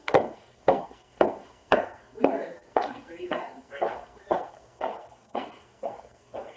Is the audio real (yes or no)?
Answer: no